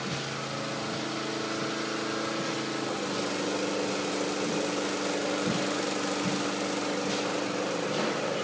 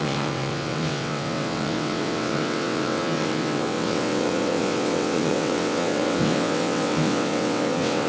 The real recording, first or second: first